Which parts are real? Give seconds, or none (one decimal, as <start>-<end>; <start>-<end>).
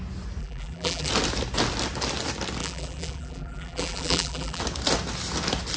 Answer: 0.0-0.4; 1.1-2.6; 4.6-5.8